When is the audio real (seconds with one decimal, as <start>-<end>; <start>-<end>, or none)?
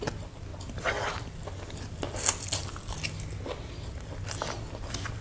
0.0-5.2